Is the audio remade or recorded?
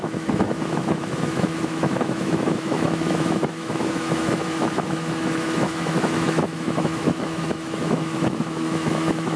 remade